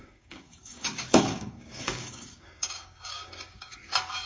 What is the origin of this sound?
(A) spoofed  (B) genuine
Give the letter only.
A